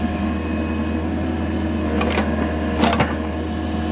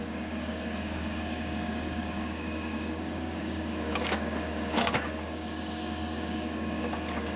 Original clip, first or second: first